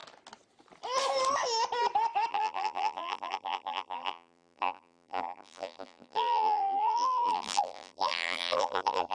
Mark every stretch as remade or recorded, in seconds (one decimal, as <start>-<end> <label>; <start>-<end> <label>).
0.0-2.3 recorded; 2.3-9.1 remade